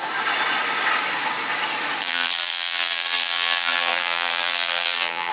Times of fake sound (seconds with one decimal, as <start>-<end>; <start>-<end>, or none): 2.0-5.3